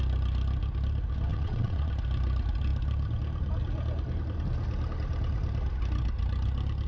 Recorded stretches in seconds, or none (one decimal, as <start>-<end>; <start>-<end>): 0.0-1.3; 1.9-6.9